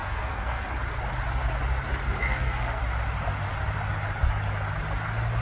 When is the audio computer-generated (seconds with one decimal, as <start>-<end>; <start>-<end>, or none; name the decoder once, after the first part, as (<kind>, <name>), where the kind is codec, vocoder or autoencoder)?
0.0-0.6 (codec, SNAC); 2.2-2.8